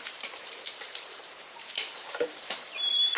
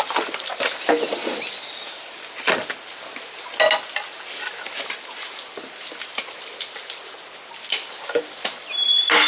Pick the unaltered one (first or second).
second